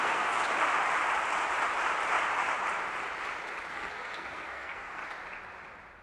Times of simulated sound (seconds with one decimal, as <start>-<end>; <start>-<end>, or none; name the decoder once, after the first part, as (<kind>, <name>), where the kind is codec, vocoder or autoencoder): 0.0-0.4 (codec, SNAC); 3.7-5.0